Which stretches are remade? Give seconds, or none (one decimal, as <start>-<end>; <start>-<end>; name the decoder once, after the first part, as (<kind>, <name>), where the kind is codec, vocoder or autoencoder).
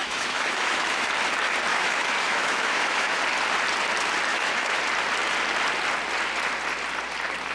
0.0-1.1 (autoencoder, DAC-VAE); 1.7-3.2; 4.3-4.8